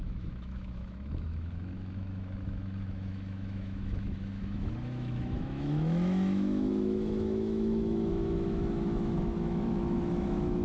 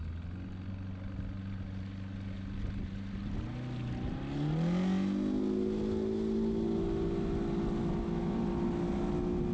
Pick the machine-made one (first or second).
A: first